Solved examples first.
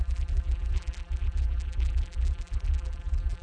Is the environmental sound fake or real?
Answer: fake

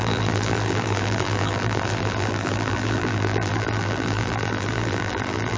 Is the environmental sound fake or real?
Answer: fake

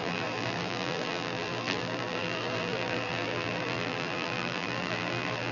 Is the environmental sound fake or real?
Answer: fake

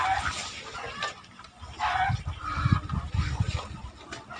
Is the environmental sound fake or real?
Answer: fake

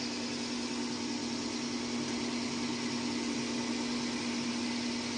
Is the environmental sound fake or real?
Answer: real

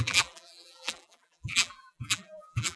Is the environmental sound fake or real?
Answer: fake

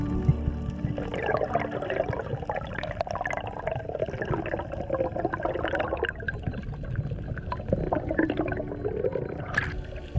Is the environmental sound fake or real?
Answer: real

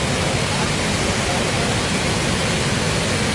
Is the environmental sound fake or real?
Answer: real